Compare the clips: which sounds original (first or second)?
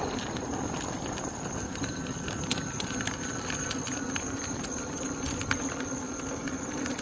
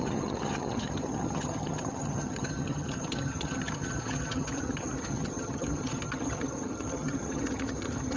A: first